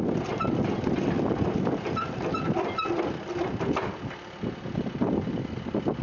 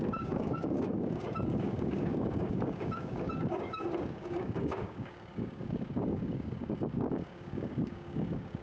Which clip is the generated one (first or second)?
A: second